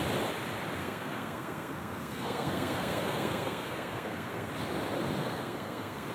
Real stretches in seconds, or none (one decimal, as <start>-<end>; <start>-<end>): 0.0-0.8; 4.5-5.2